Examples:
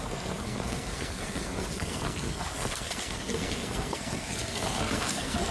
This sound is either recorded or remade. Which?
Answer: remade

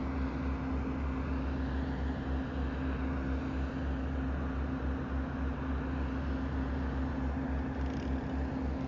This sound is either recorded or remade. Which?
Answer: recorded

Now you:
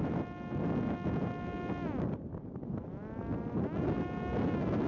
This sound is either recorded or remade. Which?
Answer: recorded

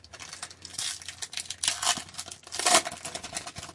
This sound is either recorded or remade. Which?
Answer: recorded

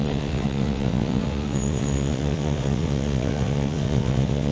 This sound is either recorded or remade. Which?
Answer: remade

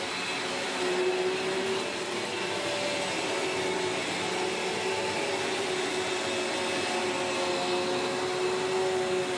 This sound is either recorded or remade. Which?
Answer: recorded